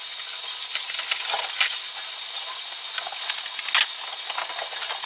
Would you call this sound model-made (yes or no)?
no